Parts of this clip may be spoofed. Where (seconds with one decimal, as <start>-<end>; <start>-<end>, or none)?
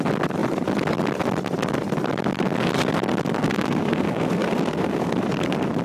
3.4-5.1